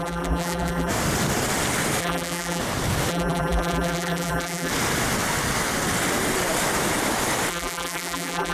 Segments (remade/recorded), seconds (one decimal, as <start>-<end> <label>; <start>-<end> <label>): 0.0-0.9 remade; 0.9-2.0 recorded; 2.0-2.6 remade; 2.6-3.1 recorded; 3.1-4.7 remade; 4.7-7.5 recorded; 7.5-8.5 remade